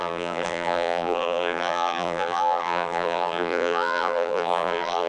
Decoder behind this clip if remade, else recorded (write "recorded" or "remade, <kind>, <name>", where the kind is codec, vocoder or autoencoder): remade, vocoder, BigVGAN v2